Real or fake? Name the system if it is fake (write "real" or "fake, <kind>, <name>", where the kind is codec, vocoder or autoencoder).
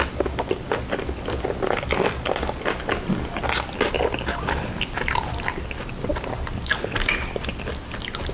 real